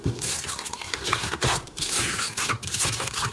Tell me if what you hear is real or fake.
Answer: fake